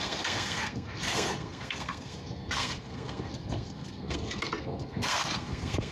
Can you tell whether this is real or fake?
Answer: fake